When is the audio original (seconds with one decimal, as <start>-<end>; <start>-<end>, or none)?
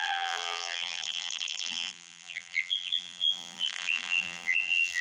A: none